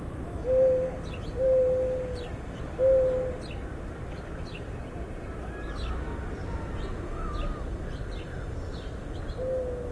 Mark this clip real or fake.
real